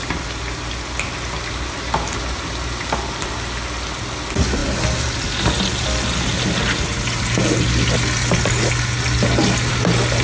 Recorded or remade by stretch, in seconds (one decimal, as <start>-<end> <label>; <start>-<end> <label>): 0.0-10.2 recorded